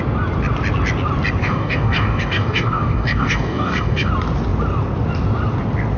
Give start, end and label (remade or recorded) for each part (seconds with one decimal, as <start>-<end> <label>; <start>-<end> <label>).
0.0-1.4 recorded; 1.4-4.1 remade; 4.1-6.0 recorded